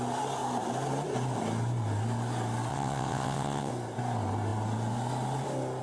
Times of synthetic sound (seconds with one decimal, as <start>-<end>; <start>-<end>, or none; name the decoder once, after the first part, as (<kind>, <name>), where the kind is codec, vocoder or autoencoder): 2.7-3.7 (vocoder, WaveNeXt)